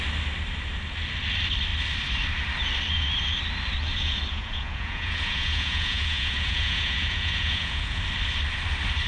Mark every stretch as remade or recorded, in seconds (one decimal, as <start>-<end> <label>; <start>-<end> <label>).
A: 0.0-3.9 recorded; 3.9-8.0 remade; 8.0-9.1 recorded